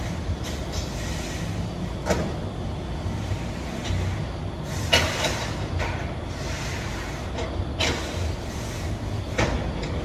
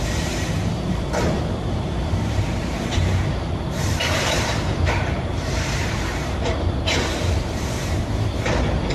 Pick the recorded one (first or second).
first